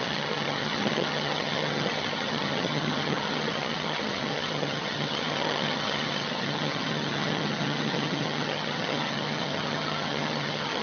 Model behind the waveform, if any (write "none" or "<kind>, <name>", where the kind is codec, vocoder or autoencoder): vocoder, HiFi-GAN